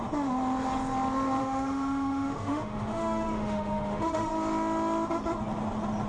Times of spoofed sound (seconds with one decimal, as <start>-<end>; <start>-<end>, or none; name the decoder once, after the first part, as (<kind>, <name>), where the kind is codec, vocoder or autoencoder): 1.4-4.3 (autoencoder, DAC-VAE)